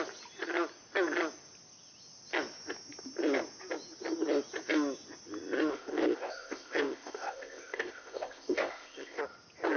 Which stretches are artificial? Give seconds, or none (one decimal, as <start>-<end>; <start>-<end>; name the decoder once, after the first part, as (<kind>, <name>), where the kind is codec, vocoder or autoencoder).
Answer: 5.7-9.2 (codec, ZipCodec)